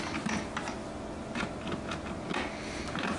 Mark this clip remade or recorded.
recorded